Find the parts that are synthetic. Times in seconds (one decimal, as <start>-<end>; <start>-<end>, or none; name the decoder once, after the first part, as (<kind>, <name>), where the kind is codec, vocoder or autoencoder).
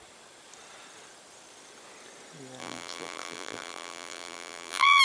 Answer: 2.6-5.0 (vocoder, BigVGAN v2)